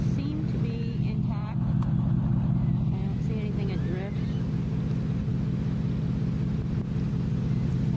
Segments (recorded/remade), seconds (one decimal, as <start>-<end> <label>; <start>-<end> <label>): 0.0-8.0 recorded